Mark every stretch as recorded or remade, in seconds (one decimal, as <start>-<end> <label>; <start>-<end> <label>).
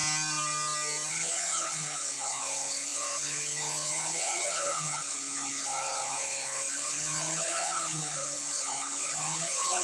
0.0-1.1 recorded; 1.1-9.8 remade